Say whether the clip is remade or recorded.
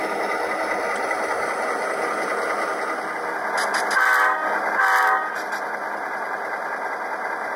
recorded